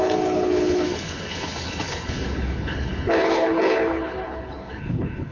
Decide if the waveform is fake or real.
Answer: fake